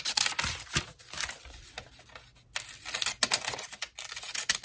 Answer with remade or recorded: recorded